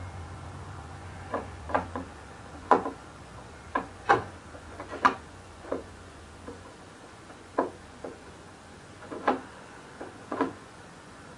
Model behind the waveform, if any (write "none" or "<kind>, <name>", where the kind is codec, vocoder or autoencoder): vocoder, Vocos